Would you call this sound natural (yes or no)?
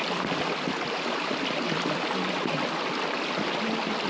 yes